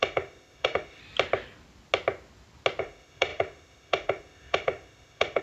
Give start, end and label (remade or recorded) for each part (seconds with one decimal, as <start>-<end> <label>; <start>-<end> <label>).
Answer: 0.0-1.0 remade; 1.0-2.8 recorded; 2.8-5.4 remade